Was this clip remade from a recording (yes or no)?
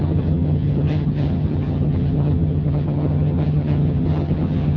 yes